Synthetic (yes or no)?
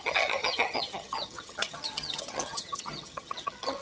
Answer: yes